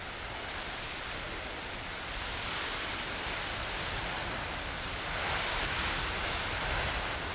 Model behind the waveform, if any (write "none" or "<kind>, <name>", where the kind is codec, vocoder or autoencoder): none